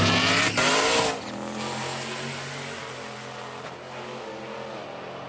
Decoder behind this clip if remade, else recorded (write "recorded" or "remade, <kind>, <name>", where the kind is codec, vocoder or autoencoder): recorded